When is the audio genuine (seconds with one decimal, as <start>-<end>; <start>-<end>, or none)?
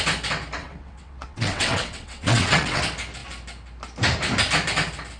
0.0-0.6; 2.8-5.2